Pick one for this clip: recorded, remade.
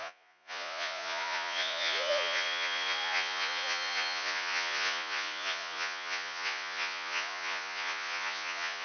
remade